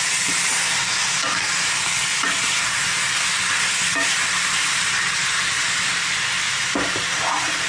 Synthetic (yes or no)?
no